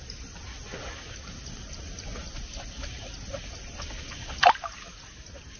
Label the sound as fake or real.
real